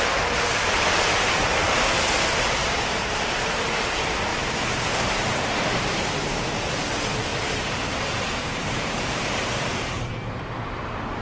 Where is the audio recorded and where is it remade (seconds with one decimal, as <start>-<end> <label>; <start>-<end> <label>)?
0.0-2.6 recorded; 2.6-3.7 remade; 3.7-4.3 recorded; 4.3-6.0 remade; 6.0-7.3 recorded; 7.3-10.0 remade; 10.0-11.2 recorded